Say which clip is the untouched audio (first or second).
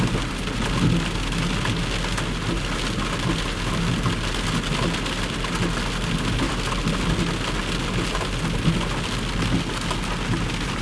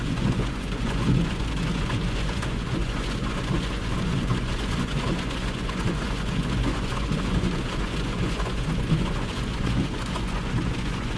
first